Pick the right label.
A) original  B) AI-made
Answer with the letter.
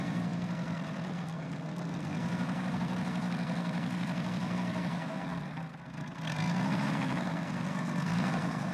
B